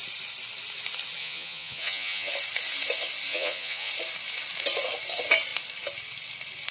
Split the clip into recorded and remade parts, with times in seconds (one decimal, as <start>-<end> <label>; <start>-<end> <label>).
0.0-1.2 recorded; 1.2-2.3 remade; 2.3-3.3 recorded; 3.3-3.9 remade; 3.9-6.7 recorded